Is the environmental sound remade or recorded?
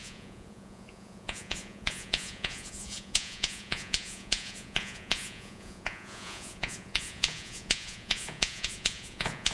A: remade